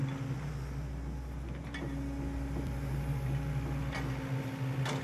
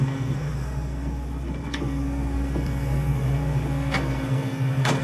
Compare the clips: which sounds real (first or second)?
first